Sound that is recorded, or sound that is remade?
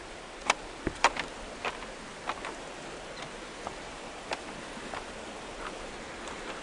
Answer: recorded